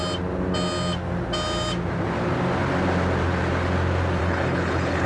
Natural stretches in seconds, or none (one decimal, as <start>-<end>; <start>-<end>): 0.0-4.2